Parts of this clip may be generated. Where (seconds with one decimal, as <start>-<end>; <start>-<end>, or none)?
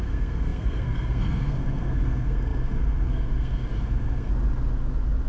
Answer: 0.0-4.3